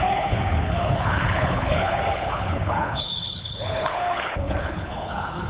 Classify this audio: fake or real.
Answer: fake